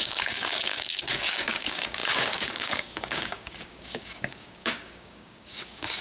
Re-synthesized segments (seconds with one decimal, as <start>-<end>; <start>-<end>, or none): 0.0-6.0